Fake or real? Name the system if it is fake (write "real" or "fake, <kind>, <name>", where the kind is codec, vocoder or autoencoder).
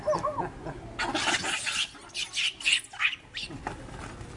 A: real